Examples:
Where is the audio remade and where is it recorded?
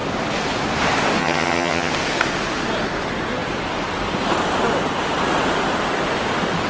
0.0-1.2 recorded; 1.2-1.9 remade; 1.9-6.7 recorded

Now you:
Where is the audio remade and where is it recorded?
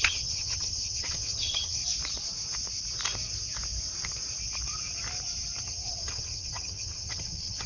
0.0-1.8 remade; 1.8-5.6 recorded; 5.6-7.7 remade